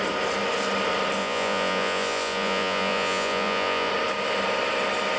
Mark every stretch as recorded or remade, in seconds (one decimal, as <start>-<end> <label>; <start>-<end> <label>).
0.0-1.2 recorded; 1.2-3.9 remade; 3.9-5.2 recorded

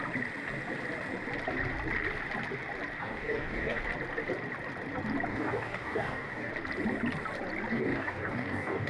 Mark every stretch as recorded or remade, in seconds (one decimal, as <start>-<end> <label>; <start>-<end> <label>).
0.0-3.0 recorded; 3.0-3.8 remade; 3.8-5.3 recorded; 5.3-6.5 remade; 6.5-7.7 recorded; 7.7-8.9 remade

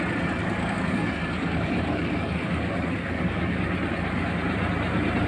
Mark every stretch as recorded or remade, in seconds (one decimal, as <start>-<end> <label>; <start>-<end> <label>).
0.0-0.4 recorded; 0.4-3.6 remade; 3.6-5.3 recorded

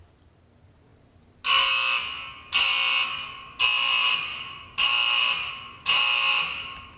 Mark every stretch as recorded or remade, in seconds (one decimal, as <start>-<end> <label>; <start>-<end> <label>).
0.0-7.0 recorded

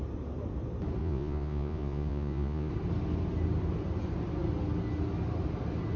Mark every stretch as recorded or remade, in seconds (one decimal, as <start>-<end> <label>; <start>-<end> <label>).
0.0-1.0 recorded; 1.0-2.7 remade; 2.7-6.0 recorded

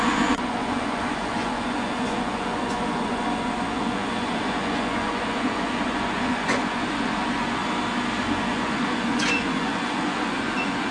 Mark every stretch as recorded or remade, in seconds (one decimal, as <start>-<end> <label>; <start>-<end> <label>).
0.0-7.6 remade; 7.6-8.2 recorded; 8.2-10.9 remade

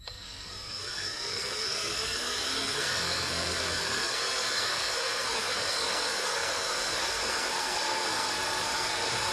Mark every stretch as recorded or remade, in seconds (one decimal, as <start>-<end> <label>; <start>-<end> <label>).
0.0-9.3 remade